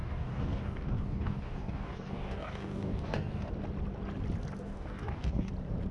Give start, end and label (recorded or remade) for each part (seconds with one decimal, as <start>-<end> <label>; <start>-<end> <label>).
0.0-3.5 remade; 3.5-4.6 recorded; 4.6-5.5 remade; 5.5-5.9 recorded